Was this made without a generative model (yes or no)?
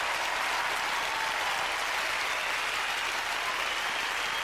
yes